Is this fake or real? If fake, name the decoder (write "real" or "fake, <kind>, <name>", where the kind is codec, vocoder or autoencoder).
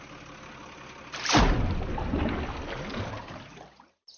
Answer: real